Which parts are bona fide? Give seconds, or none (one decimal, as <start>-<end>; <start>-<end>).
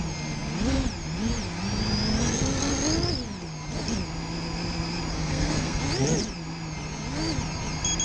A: 0.0-5.1; 5.8-8.0